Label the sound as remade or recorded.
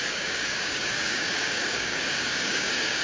remade